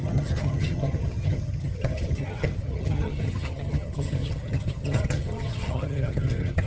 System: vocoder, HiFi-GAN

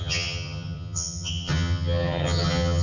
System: vocoder, HiFi-GAN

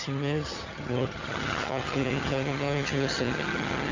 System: vocoder, HiFi-GAN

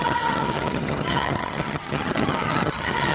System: vocoder, HiFi-GAN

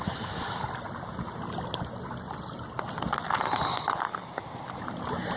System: none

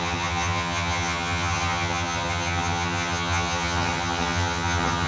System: vocoder, HiFi-GAN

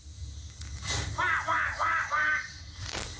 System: none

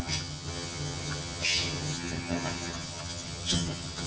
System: vocoder, HiFi-GAN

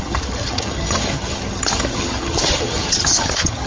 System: vocoder, HiFi-GAN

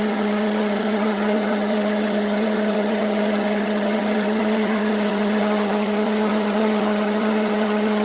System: vocoder, HiFi-GAN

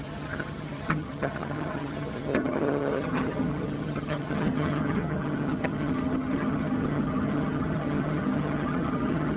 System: vocoder, HiFi-GAN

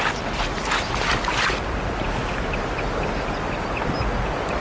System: none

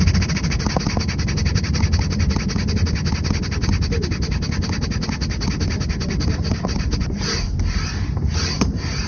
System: none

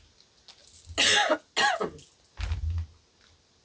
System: none